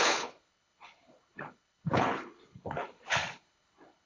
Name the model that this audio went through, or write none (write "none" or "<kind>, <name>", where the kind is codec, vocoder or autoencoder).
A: codec, HILCodec